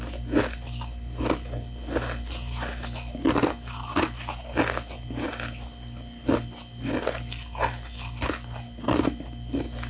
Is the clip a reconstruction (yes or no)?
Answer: no